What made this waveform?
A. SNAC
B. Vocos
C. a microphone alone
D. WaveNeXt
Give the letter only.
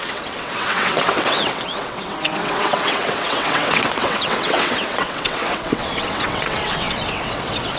D